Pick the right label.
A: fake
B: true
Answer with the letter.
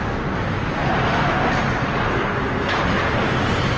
B